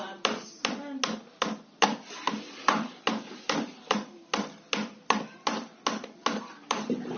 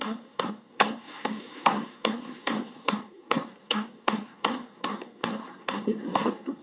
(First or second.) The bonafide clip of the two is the first